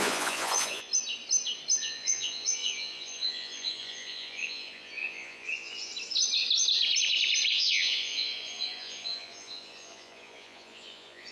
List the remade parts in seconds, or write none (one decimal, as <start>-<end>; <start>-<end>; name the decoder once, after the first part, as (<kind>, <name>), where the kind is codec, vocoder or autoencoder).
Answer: 0.0-0.9 (vocoder, Vocos); 1.8-5.9; 7.5-11.3